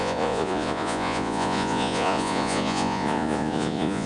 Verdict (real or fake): fake